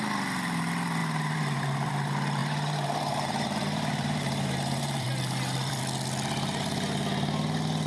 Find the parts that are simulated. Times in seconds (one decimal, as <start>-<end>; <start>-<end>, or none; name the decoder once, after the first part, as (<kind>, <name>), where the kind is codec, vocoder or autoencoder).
1.0-1.9 (vocoder, BigVGAN v2); 2.4-5.8